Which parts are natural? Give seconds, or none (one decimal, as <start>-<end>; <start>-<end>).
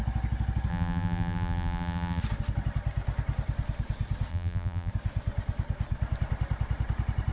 0.0-0.7; 2.2-4.3; 4.9-7.3